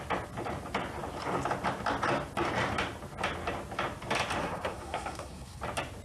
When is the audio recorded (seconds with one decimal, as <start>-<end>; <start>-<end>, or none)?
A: 0.0-4.4; 5.6-6.0